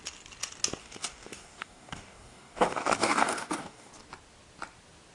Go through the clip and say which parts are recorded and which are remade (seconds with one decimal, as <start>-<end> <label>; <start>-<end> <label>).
0.0-0.8 recorded; 0.8-3.9 remade; 3.9-5.1 recorded